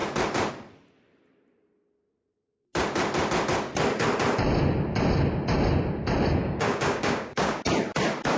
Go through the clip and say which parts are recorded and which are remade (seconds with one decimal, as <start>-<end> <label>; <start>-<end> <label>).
0.0-6.4 recorded; 6.4-7.6 remade; 7.6-8.4 recorded